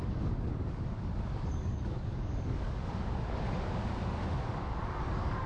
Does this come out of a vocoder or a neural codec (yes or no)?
yes